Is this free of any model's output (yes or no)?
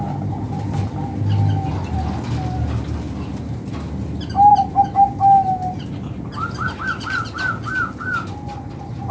yes